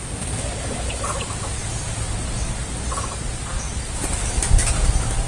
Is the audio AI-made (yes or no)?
no